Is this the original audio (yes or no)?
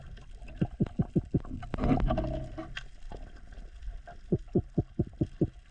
yes